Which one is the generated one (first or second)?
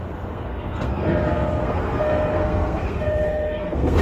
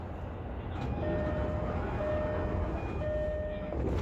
first